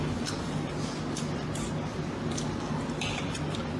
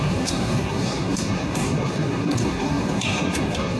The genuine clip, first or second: first